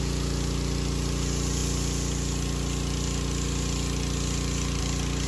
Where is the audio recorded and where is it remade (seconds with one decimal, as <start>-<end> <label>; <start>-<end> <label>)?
0.0-5.3 recorded